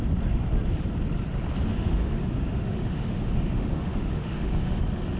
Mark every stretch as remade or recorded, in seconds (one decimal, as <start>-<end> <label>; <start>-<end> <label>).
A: 0.0-1.7 recorded; 1.7-4.8 remade; 4.8-5.2 recorded